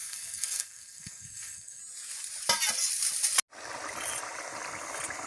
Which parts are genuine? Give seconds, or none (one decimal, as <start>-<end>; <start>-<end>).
1.8-5.3